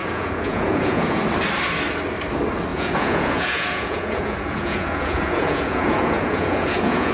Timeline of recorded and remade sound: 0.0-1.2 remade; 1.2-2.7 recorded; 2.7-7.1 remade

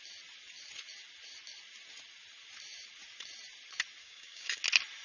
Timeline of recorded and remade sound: 0.0-4.0 recorded; 4.0-4.6 remade; 4.6-5.0 recorded

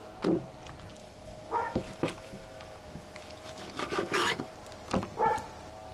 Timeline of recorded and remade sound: 0.0-1.0 recorded; 1.0-4.5 remade; 4.5-5.9 recorded